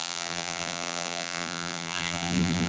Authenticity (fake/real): fake